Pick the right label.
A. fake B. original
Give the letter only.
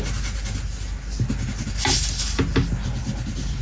B